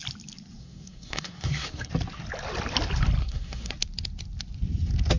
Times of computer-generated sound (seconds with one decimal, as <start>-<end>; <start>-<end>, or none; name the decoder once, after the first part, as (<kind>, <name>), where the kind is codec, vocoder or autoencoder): 0.6-1.9 (codec, SNAC); 3.2-3.7